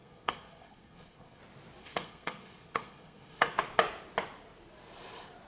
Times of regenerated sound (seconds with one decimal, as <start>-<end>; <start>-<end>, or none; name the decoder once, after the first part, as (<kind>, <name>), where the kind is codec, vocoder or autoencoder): 0.0-1.4 (codec, SNAC); 1.8-3.6